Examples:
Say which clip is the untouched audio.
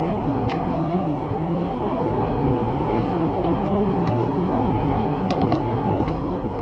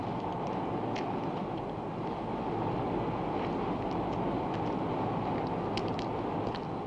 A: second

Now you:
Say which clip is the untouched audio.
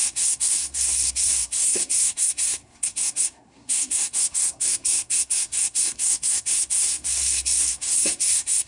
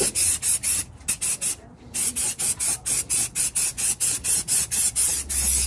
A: second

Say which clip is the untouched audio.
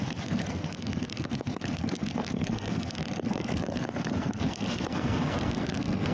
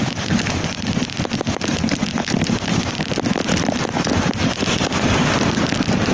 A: second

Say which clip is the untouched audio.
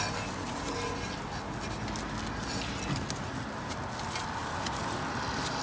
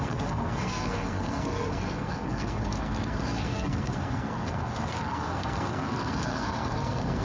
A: first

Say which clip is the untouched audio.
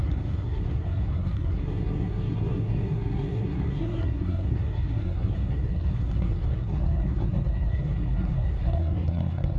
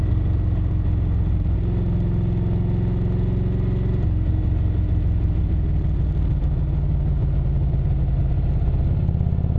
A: second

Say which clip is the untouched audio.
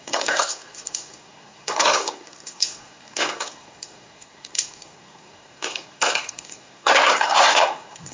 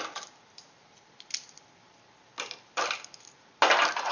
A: second